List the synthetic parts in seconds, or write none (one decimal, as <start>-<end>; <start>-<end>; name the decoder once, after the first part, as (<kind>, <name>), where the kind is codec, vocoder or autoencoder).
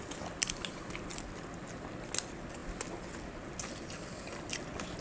none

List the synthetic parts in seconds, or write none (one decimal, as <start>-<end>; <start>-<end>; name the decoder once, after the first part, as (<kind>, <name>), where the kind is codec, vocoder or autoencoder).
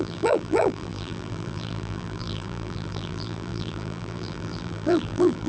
0.0-5.5 (vocoder, BigVGAN v2)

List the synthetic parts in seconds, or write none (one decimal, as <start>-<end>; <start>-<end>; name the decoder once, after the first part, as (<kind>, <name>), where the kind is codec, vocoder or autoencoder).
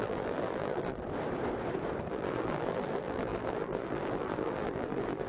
0.0-1.0 (vocoder, BigVGAN v2); 2.1-5.3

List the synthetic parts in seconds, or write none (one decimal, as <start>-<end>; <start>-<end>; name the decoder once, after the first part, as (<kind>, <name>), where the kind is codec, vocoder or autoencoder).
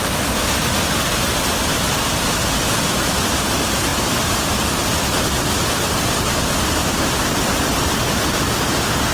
3.9-5.5 (vocoder, BigVGAN v2); 6.8-7.5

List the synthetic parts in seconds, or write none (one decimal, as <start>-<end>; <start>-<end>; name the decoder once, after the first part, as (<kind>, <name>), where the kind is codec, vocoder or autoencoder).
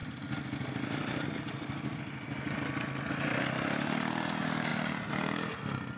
none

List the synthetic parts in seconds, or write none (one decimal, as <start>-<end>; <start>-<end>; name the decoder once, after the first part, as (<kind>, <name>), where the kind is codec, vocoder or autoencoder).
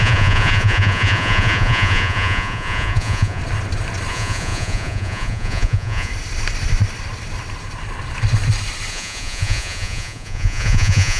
0.0-3.4 (vocoder, Vocos); 4.1-6.1; 8.9-11.2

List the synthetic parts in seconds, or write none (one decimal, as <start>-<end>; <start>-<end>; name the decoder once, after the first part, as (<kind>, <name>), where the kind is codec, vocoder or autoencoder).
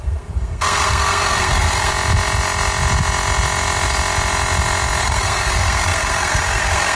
0.0-1.9 (codec, SNAC); 5.0-6.9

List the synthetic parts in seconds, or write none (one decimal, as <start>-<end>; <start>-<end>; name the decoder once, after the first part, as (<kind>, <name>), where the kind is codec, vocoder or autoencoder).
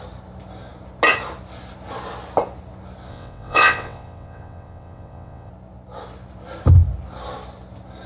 3.1-5.5 (vocoder, WaveNeXt)